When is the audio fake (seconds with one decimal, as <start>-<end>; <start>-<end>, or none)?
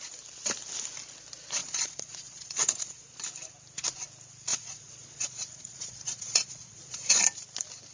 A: 1.6-3.2; 4.5-7.2